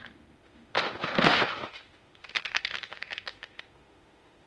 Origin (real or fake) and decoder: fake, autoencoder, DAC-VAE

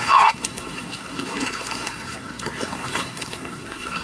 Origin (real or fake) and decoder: fake, codec, SNAC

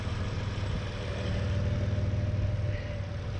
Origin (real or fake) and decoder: real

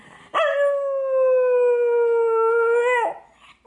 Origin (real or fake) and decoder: real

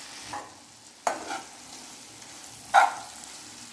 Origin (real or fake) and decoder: real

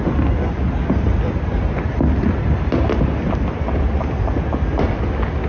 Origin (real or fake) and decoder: real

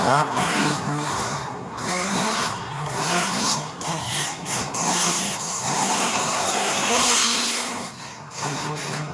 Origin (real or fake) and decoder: fake, codec, SNAC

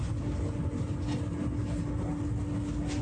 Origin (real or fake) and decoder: real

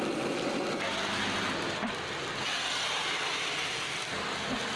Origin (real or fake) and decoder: real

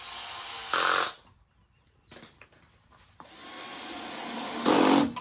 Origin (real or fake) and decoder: fake, vocoder, BigVGAN v2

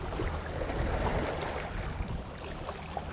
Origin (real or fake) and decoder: real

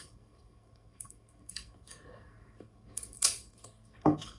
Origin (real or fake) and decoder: fake, codec, SNAC